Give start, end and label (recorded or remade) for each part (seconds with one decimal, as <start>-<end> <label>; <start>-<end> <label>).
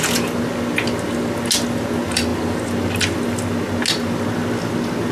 0.0-5.1 recorded